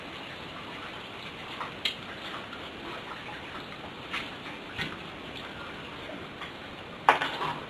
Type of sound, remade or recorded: recorded